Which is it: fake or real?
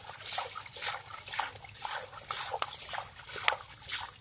real